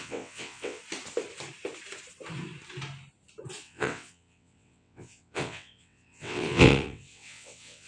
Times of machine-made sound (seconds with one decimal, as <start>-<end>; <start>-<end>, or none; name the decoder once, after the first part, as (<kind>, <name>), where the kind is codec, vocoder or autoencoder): 0.0-0.8 (vocoder, WaveNeXt); 3.6-7.9